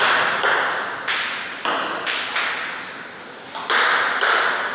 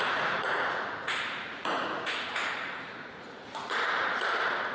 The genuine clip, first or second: first